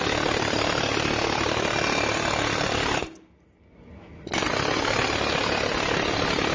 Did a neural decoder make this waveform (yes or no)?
no